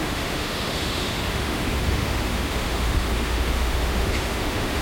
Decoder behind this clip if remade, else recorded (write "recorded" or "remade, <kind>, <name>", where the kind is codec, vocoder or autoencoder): remade, autoencoder, DAC-VAE